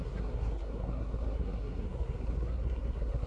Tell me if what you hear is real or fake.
fake